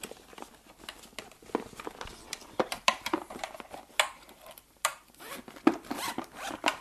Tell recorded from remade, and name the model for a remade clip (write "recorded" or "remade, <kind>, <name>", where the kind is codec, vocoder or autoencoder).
recorded